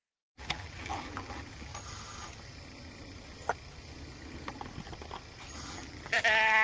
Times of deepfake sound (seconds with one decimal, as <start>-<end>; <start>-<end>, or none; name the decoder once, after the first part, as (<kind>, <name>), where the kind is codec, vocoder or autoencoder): 0.0-1.7 (vocoder, BigVGAN v2); 5.7-6.6